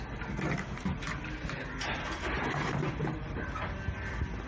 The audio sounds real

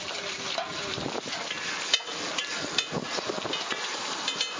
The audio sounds real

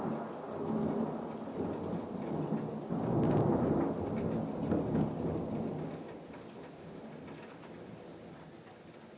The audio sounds real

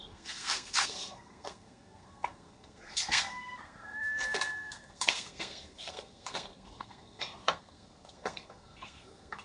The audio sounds fake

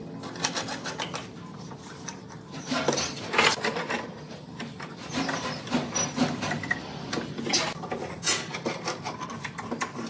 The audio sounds real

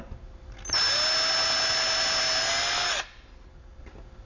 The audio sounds real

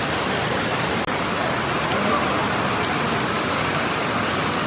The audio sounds real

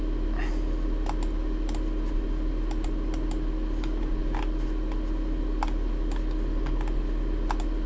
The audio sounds real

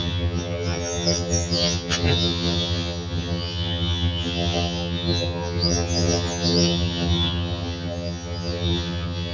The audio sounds fake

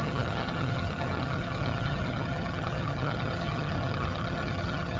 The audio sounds fake